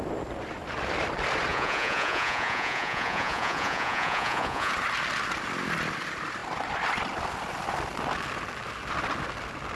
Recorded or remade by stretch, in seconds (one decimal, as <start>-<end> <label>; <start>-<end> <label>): 0.0-1.5 recorded; 1.5-4.7 remade; 4.7-9.8 recorded